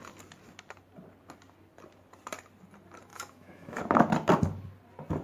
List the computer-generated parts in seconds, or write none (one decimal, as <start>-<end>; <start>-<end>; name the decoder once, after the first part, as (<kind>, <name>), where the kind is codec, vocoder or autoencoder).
3.1-3.8 (autoencoder, DAC-VAE)